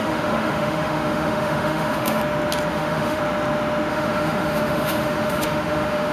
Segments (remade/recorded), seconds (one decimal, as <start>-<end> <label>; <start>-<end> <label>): 0.0-2.2 remade; 2.2-2.7 recorded; 2.7-3.2 remade; 3.2-3.9 recorded; 3.9-6.1 remade